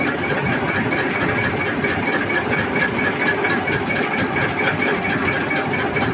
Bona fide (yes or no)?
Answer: yes